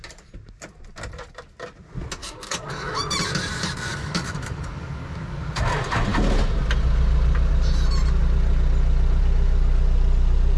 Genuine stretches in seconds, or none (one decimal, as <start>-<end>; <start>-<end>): 0.0-2.2; 3.0-3.9; 5.4-10.6

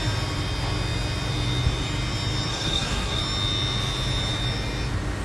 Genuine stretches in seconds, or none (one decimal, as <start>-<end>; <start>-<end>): 0.0-2.5; 3.2-5.2

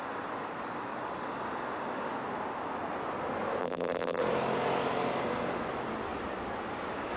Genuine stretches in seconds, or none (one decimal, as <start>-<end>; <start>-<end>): 0.0-3.6; 4.2-7.2

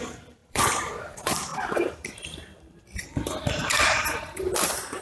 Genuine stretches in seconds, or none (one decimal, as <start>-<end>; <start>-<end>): none

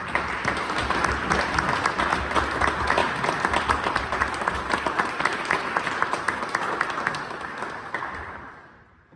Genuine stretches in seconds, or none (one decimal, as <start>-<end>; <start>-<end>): 0.0-3.0; 7.0-9.2

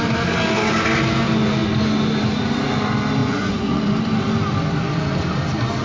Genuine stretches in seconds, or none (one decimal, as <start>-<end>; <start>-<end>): 0.0-3.2; 4.0-5.8

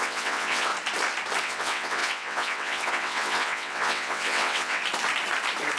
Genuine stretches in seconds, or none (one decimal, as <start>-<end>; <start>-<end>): 0.7-1.4; 4.8-5.8